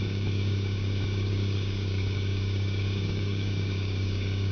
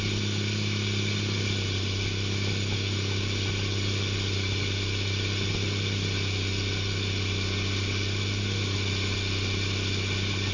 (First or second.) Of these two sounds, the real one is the second